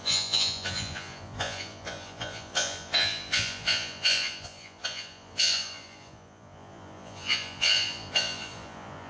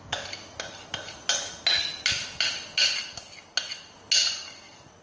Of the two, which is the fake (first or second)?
first